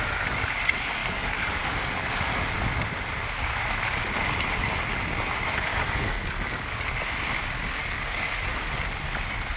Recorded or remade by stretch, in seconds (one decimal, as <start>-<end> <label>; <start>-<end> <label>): 0.0-1.0 recorded; 1.0-1.5 remade; 1.5-5.7 recorded; 5.7-6.9 remade; 6.9-7.8 recorded; 7.8-8.4 remade; 8.4-9.6 recorded